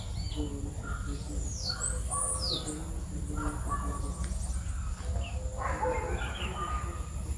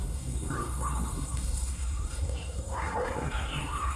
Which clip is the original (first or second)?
first